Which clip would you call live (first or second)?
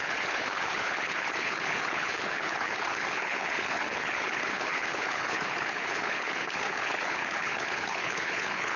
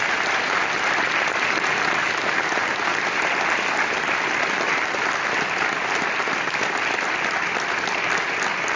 second